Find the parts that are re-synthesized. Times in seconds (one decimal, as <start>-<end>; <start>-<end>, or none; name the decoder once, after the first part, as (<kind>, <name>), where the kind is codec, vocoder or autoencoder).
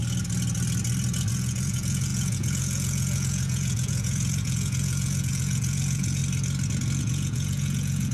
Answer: 1.3-6.2 (vocoder, Vocos); 7.0-8.1